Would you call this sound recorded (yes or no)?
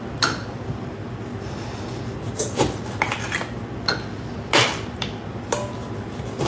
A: yes